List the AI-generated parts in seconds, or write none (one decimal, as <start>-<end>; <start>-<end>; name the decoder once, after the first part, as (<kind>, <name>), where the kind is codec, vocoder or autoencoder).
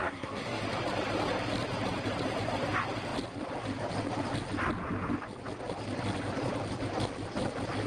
0.0-0.6 (codec, SNAC)